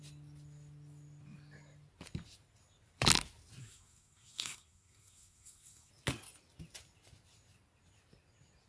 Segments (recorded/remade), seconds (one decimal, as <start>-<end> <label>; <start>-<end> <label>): 0.0-3.6 recorded; 3.6-5.9 remade; 5.9-8.7 recorded